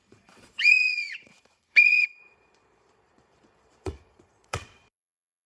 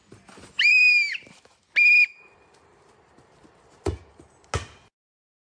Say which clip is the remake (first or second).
first